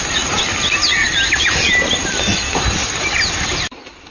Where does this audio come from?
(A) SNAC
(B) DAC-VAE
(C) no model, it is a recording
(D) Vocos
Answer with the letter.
C